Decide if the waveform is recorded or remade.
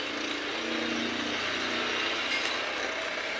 recorded